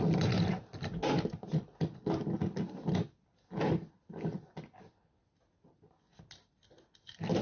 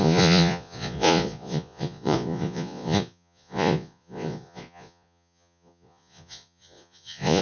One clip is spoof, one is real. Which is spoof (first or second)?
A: second